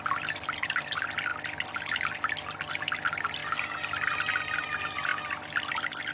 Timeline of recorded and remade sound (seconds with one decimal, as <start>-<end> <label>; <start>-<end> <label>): 0.0-6.1 recorded